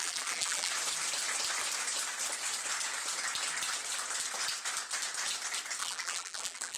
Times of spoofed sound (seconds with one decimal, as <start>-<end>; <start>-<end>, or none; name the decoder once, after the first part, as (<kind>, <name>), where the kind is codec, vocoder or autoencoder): 0.0-0.7 (vocoder, BigVGAN v2); 5.8-6.8